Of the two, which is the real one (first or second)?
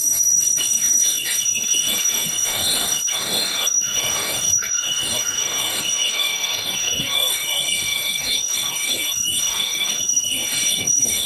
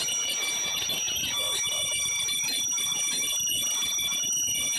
second